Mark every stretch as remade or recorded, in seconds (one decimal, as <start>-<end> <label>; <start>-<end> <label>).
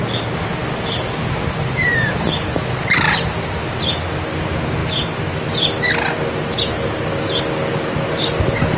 0.0-4.8 remade; 4.8-7.4 recorded; 7.4-8.8 remade